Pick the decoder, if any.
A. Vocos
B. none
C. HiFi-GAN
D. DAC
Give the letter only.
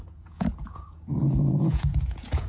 A